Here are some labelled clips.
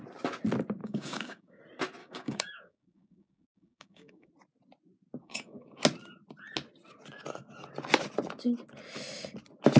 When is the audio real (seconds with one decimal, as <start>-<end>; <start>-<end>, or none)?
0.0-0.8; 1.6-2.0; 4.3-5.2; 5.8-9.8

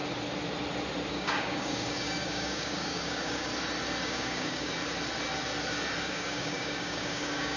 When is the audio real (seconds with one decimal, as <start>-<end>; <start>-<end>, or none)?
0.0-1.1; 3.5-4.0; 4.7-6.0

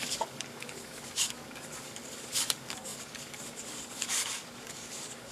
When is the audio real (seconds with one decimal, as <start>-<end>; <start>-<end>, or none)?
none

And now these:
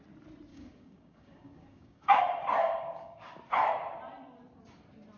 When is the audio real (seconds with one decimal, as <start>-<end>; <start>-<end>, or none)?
0.0-0.5; 2.2-2.6; 3.3-5.2